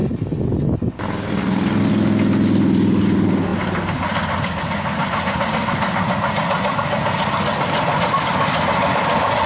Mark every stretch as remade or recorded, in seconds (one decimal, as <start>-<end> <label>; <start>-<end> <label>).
0.0-9.5 recorded